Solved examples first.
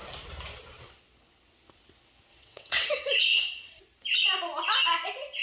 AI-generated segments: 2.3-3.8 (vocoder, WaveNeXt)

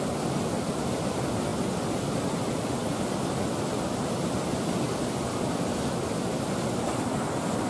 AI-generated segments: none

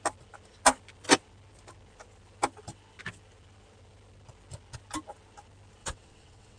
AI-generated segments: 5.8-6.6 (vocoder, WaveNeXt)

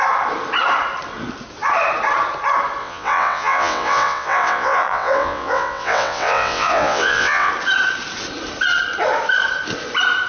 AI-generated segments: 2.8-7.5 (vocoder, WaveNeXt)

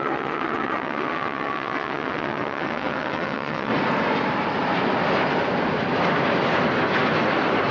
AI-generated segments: 0.0-3.7 (vocoder, WaveNeXt)